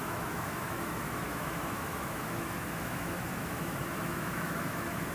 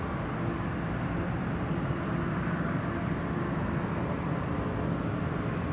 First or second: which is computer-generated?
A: first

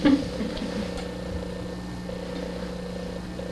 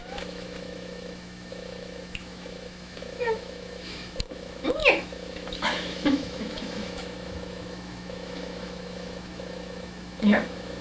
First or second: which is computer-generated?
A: second